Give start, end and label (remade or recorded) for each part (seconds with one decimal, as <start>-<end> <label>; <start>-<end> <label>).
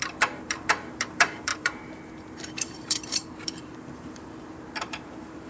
0.0-5.5 remade